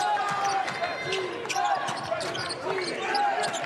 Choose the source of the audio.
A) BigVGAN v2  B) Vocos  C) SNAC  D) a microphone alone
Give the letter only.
D